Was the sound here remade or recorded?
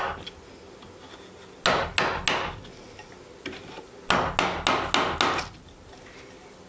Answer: recorded